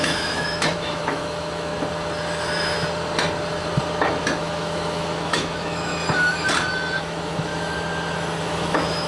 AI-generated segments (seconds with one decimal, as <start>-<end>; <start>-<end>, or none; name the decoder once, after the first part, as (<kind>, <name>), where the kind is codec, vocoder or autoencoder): 0.0-1.7 (autoencoder, DAC-VAE); 4.4-5.9; 7.0-7.5; 8.4-9.1